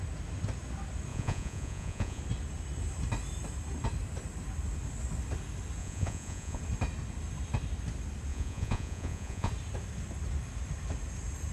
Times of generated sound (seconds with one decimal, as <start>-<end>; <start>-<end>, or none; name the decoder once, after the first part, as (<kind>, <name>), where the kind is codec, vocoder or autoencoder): 1.1-2.2 (vocoder, Vocos); 5.8-6.6; 8.3-9.5